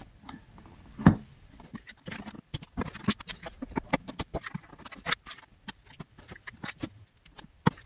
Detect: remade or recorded recorded